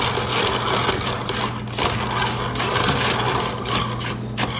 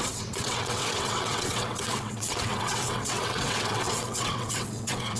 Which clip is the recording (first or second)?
first